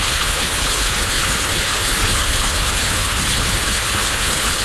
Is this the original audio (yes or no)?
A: no